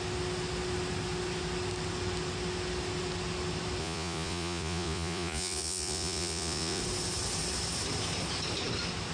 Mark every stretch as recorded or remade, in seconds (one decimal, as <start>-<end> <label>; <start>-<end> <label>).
0.0-3.8 recorded; 3.8-6.8 remade; 6.8-9.1 recorded